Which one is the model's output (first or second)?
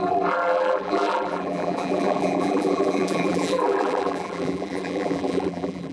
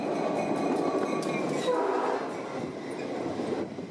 first